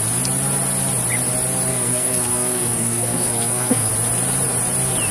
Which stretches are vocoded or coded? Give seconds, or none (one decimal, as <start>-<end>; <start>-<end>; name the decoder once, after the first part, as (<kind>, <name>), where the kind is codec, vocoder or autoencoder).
1.7-3.9 (codec, SNAC)